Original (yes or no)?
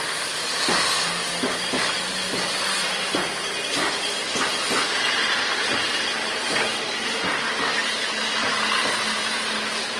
yes